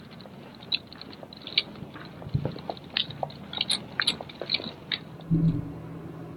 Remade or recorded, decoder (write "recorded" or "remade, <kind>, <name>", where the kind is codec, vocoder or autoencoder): recorded